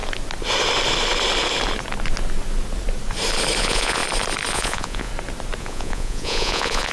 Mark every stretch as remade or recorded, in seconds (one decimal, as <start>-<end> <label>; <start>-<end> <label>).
0.0-3.6 recorded; 3.6-4.0 remade; 4.0-4.5 recorded; 4.5-5.1 remade; 5.1-5.6 recorded; 5.6-6.9 remade